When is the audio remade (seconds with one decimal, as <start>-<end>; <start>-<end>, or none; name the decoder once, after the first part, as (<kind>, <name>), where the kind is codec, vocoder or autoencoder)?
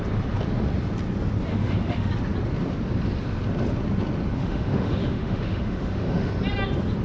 1.5-2.1 (autoencoder, DAC-VAE); 4.4-6.3